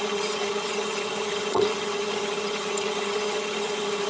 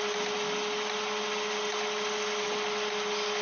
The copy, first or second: first